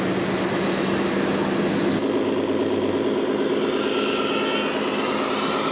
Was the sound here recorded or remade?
recorded